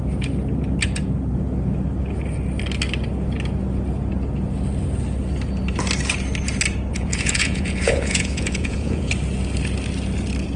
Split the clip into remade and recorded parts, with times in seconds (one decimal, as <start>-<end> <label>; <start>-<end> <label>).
0.0-6.9 recorded; 6.9-9.1 remade; 9.1-10.6 recorded

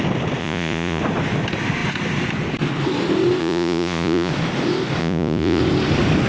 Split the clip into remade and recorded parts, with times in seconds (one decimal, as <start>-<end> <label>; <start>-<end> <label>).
0.0-0.4 recorded; 0.4-1.0 remade; 1.0-3.4 recorded; 3.4-4.3 remade; 4.3-5.0 recorded; 5.0-5.6 remade; 5.6-6.3 recorded

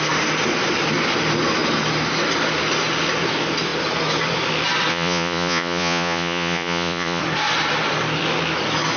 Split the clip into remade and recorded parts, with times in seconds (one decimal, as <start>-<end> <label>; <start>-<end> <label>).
0.0-4.9 recorded; 4.9-7.2 remade; 7.2-9.0 recorded